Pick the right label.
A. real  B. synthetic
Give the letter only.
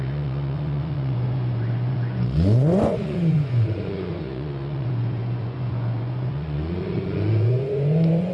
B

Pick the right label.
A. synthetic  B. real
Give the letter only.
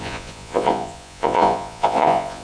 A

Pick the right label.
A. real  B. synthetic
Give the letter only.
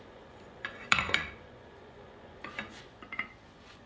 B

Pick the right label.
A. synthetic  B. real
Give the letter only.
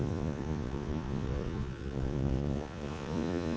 A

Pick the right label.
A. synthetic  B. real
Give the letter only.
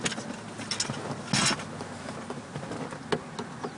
B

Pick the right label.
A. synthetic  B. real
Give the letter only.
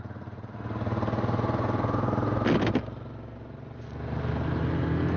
B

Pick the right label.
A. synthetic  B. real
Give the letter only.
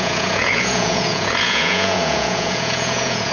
A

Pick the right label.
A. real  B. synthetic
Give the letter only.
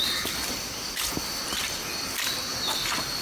A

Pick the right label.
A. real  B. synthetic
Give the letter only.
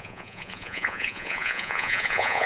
B